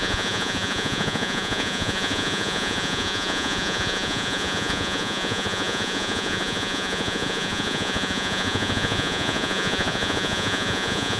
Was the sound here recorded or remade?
remade